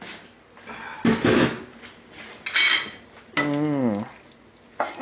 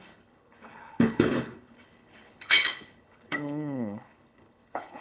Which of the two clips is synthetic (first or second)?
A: second